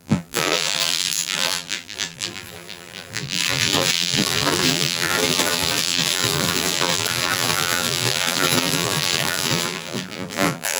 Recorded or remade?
remade